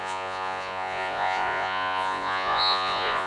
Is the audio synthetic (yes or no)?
yes